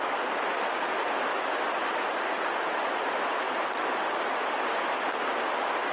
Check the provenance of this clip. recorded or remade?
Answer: recorded